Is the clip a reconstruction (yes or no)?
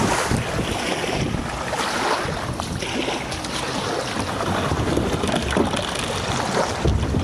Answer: no